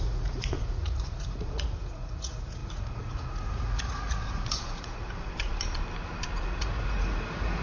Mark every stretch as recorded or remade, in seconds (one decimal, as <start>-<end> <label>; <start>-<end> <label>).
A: 0.0-5.5 remade; 5.5-6.4 recorded; 6.4-7.6 remade